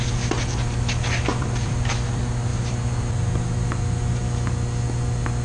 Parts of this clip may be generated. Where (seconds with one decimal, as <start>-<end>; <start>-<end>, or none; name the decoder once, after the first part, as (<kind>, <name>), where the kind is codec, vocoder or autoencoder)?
1.3-1.9 (vocoder, BigVGAN v2)